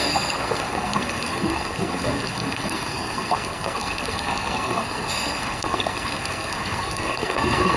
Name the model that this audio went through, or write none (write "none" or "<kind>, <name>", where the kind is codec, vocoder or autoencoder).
codec, SNAC